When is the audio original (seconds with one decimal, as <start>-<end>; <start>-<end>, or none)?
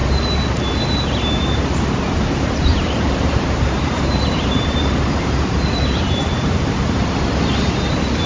0.0-2.7; 7.5-8.3